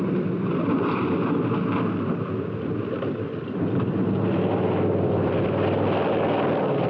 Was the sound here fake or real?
real